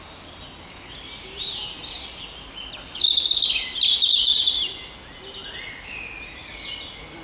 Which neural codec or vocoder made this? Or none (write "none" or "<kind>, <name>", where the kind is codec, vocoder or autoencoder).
none